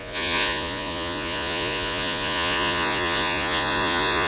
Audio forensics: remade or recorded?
remade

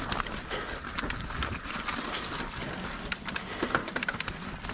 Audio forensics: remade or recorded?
recorded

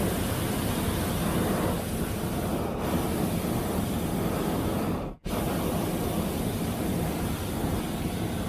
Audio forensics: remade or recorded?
recorded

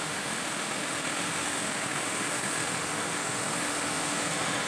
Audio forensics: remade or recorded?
remade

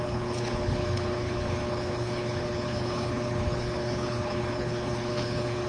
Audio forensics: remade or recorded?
remade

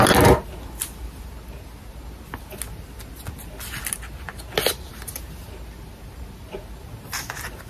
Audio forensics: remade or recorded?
recorded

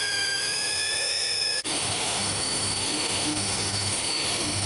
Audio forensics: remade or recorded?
remade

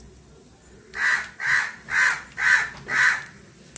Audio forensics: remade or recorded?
recorded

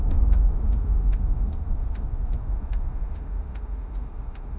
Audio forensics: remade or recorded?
remade